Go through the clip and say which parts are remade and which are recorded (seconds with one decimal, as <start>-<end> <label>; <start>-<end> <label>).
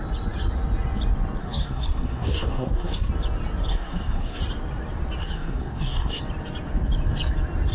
0.0-1.4 recorded; 1.4-3.1 remade; 3.1-3.7 recorded; 3.7-4.4 remade; 4.4-5.2 recorded; 5.2-6.2 remade; 6.2-7.7 recorded